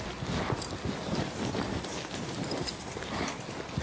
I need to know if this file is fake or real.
real